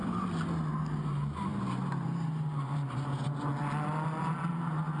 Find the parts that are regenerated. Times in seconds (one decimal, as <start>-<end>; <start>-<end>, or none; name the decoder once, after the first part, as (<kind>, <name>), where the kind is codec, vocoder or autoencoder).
none